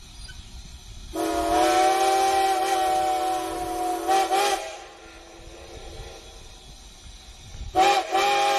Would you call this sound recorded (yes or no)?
yes